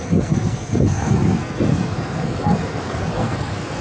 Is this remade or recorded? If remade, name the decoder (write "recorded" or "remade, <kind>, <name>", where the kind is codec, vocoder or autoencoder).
remade, codec, SNAC